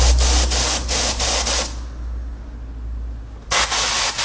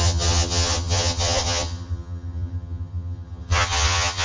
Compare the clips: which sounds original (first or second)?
first